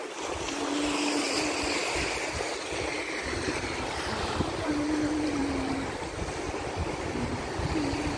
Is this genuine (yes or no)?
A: yes